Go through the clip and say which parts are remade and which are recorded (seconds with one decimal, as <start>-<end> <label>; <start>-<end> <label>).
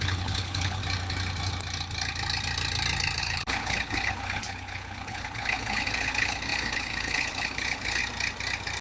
0.0-0.8 remade; 0.8-3.2 recorded; 3.2-8.0 remade; 8.0-8.8 recorded